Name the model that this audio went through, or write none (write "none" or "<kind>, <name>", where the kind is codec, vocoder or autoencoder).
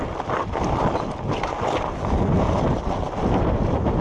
none